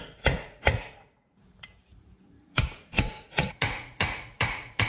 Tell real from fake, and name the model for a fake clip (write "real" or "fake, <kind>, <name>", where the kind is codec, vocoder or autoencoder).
fake, vocoder, Vocos